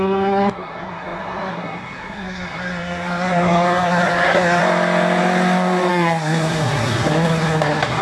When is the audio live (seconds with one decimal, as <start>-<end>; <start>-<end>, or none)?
4.6-5.9